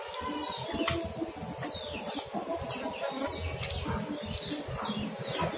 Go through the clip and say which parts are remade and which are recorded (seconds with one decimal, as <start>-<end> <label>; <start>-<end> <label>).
0.0-5.6 recorded